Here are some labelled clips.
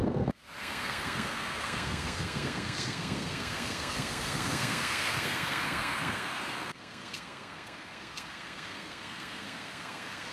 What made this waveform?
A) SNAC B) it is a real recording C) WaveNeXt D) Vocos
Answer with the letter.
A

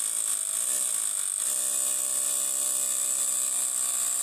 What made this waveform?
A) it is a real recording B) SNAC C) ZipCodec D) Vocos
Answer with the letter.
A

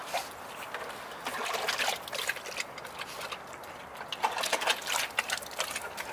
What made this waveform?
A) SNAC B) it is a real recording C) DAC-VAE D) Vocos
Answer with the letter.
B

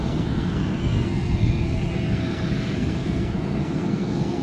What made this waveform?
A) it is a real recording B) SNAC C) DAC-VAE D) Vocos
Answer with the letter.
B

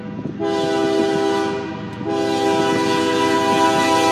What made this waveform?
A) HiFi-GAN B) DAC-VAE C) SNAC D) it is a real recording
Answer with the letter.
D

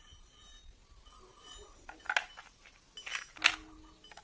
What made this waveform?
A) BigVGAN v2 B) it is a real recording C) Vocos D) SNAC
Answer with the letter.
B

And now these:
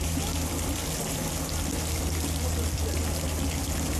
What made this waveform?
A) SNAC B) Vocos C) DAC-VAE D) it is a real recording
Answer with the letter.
D